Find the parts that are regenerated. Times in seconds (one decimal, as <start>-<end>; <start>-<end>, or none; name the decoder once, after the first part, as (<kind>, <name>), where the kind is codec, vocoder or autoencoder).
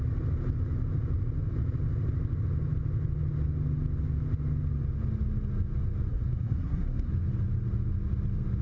6.1-7.1 (codec, SNAC)